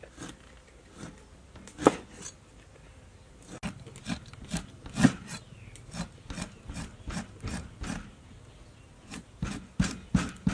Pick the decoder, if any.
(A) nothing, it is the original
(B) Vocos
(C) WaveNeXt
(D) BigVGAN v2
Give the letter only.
A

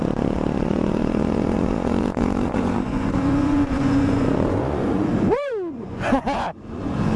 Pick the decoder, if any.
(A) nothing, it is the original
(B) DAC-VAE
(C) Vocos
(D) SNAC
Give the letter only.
C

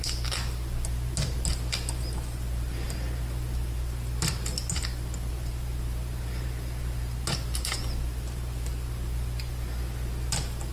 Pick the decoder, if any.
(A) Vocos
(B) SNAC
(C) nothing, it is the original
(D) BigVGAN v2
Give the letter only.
C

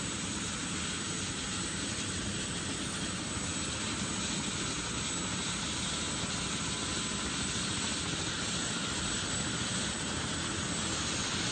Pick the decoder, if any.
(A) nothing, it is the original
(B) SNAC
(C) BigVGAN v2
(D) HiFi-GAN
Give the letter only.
A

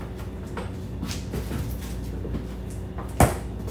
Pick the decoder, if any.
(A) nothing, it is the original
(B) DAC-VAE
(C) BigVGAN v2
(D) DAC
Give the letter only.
A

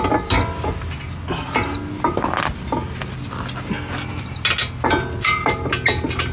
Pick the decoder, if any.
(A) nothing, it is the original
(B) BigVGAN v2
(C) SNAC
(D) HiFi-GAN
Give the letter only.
A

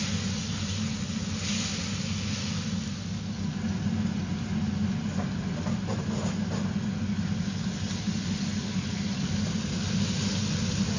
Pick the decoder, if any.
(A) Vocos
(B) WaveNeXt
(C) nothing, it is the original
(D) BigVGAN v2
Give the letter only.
C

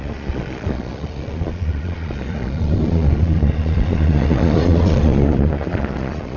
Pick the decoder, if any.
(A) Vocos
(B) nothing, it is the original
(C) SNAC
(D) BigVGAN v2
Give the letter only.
A